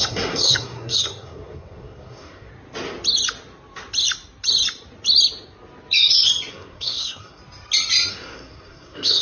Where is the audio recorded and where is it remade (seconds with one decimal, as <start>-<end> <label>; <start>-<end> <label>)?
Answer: 0.0-2.5 remade; 2.5-6.5 recorded; 6.5-7.4 remade; 7.4-8.1 recorded; 8.1-9.2 remade